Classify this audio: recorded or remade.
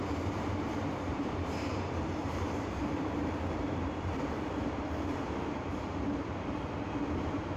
remade